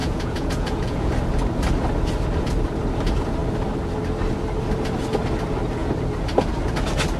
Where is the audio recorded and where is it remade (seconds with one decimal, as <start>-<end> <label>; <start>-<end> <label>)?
0.0-1.1 remade; 1.1-7.2 recorded